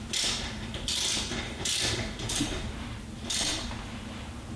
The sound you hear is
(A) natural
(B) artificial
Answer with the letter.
A